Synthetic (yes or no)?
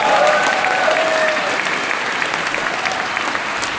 no